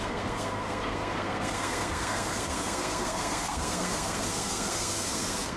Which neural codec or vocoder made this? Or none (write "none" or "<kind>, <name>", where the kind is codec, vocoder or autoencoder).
codec, SNAC